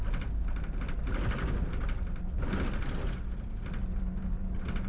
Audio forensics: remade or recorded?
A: recorded